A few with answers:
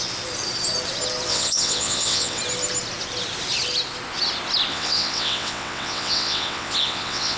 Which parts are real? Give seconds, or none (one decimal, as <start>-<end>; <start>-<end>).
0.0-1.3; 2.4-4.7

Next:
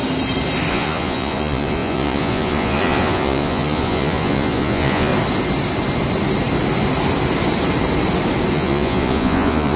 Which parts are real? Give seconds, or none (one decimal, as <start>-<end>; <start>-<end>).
0.0-0.7; 5.1-8.5

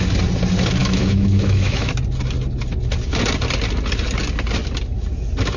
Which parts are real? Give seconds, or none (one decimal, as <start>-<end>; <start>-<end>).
0.0-0.8; 1.9-5.6

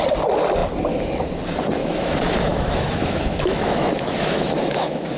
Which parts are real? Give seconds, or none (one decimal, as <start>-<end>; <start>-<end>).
0.0-1.8

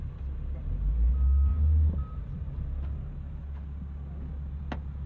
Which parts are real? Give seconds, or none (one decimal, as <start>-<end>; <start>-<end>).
0.0-5.1

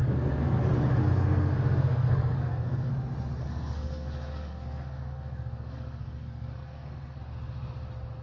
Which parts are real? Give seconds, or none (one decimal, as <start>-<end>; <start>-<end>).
0.6-1.0; 2.9-3.4; 7.2-8.2

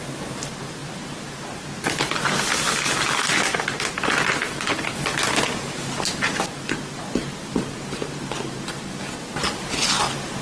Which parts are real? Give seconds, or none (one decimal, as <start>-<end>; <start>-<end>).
0.0-10.4